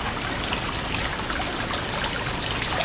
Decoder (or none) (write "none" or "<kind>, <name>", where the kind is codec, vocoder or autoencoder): none